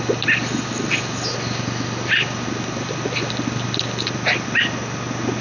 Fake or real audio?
real